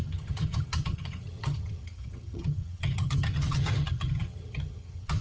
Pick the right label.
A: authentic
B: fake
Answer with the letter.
B